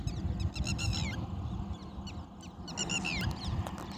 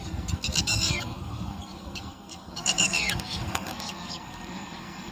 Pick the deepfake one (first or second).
second